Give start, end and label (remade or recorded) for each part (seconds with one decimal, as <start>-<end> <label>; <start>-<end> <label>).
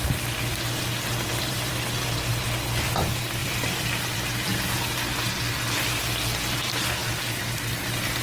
0.0-1.3 recorded; 1.3-2.3 remade; 2.3-3.4 recorded; 3.4-4.5 remade; 4.5-8.2 recorded